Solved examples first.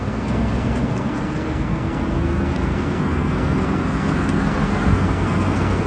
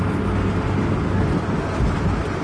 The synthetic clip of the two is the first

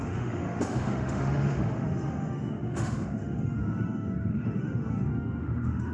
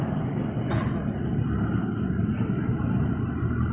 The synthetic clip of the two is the first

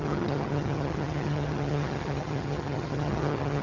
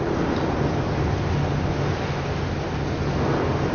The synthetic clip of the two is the first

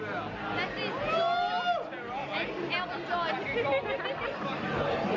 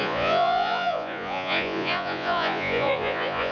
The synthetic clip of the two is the second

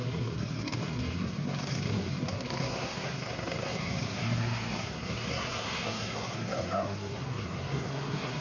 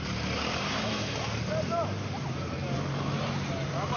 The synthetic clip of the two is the first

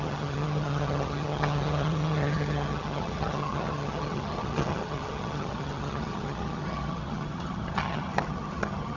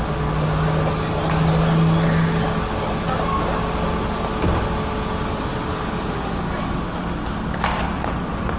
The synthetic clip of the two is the first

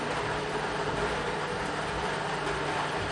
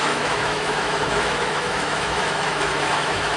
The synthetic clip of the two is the second